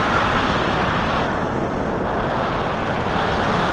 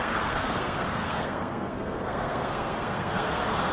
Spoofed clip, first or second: second